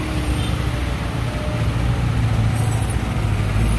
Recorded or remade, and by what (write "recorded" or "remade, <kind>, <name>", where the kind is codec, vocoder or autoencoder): recorded